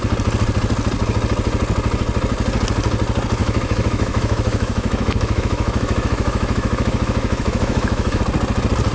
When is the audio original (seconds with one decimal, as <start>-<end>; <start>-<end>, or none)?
0.0-3.4; 8.2-8.9